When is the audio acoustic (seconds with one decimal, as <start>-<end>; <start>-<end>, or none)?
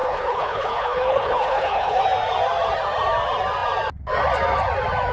2.0-5.1